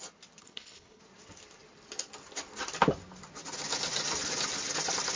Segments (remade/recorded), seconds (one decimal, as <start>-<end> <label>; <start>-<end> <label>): 0.0-0.4 recorded; 0.4-1.0 remade; 1.0-5.2 recorded